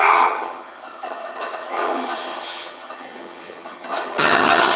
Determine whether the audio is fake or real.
fake